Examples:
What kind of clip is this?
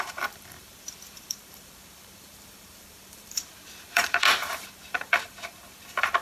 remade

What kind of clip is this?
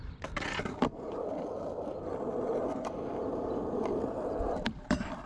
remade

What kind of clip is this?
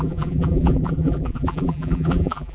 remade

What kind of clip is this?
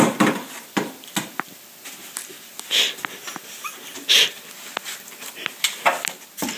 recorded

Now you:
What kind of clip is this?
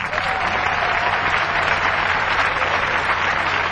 remade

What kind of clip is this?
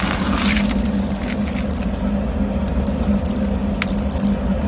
recorded